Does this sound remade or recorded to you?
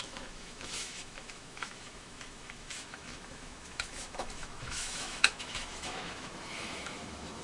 remade